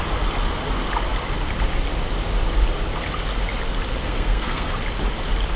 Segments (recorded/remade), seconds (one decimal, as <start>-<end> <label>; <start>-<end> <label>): 0.0-4.0 recorded; 4.0-4.7 remade; 4.7-5.6 recorded